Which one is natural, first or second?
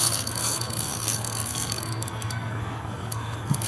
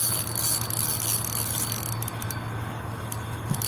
second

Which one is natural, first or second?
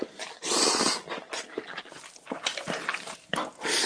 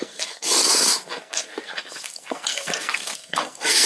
first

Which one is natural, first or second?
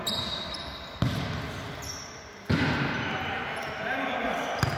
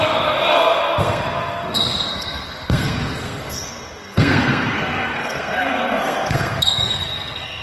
first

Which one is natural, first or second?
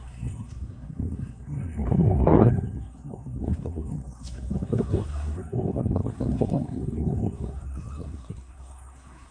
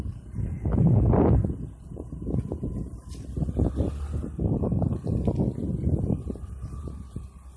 second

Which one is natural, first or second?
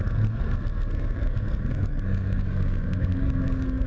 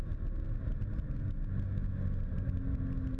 second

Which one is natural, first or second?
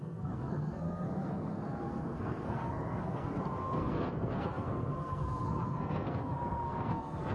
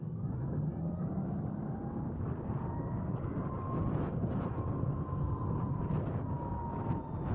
second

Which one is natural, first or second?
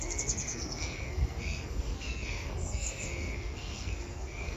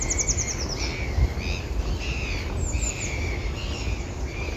second